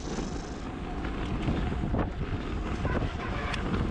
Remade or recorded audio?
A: recorded